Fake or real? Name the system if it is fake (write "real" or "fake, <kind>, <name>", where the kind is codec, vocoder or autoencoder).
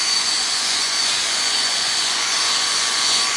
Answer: fake, vocoder, Vocos